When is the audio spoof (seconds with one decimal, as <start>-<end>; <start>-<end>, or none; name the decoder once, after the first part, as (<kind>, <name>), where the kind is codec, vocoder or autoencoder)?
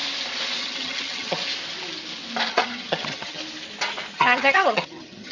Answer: 0.6-1.4 (vocoder, HiFi-GAN); 2.5-3.4; 4.1-5.3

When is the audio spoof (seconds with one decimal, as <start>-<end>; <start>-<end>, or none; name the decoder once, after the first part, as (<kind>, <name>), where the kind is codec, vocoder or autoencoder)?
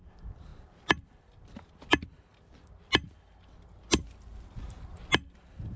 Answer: none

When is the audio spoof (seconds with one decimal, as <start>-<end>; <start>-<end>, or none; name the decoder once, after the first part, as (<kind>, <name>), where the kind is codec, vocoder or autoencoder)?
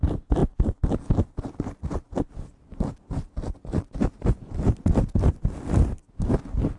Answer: none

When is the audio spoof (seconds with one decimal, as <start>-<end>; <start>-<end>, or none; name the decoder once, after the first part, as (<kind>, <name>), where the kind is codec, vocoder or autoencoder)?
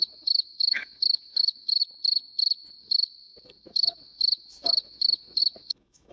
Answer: 0.0-1.8 (autoencoder, DAC-VAE); 2.8-6.1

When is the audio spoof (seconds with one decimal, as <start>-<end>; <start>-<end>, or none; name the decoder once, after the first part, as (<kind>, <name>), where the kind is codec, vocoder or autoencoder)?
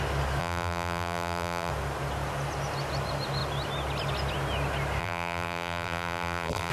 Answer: 0.4-1.7 (vocoder, BigVGAN v2); 5.0-6.7